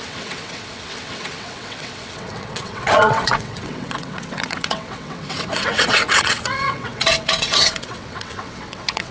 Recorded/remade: remade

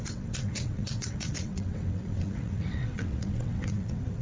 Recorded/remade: remade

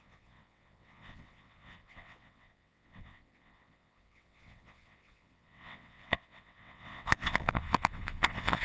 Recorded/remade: remade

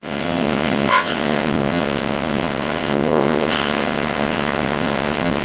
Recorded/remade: remade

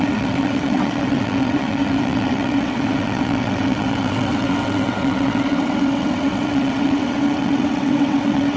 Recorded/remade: remade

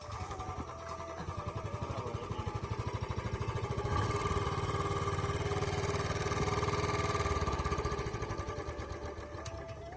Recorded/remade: recorded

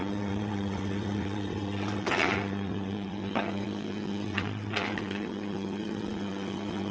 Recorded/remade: remade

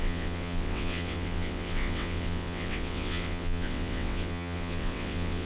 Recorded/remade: remade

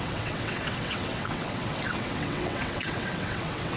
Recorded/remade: remade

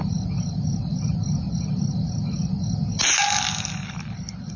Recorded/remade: recorded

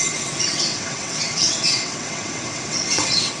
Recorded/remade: remade